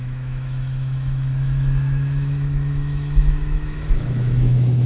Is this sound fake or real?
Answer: fake